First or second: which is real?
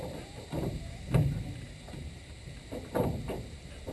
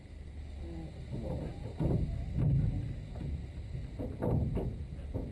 second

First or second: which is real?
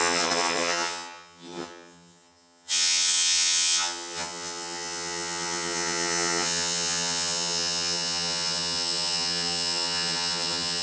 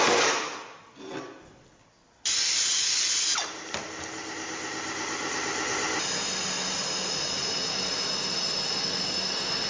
second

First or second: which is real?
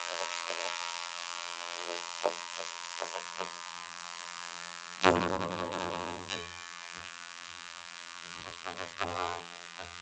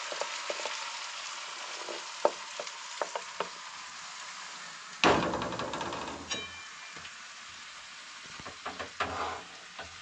second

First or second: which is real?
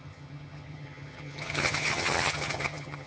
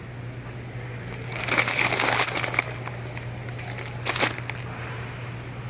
second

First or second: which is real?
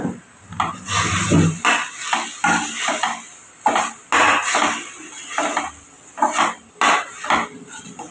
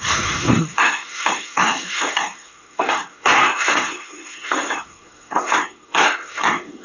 first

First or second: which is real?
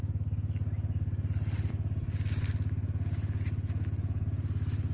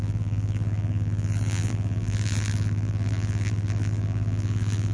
first